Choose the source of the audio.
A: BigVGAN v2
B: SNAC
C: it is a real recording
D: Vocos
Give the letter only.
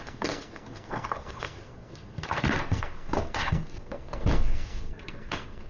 B